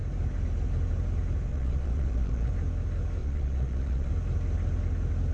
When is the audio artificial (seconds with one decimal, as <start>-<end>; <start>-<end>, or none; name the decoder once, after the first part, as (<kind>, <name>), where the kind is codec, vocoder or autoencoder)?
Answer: 1.5-2.5 (vocoder, Vocos); 3.2-4.1